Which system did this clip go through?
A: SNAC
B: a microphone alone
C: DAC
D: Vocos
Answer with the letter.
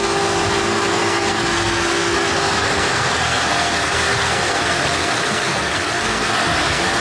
A